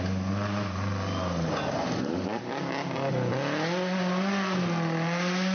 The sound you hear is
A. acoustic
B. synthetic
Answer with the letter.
A